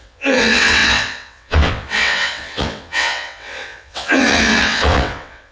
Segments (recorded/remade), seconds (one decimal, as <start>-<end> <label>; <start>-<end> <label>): 0.0-5.5 remade